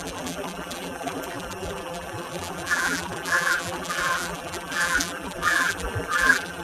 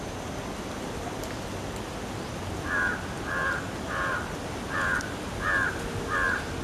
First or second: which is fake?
first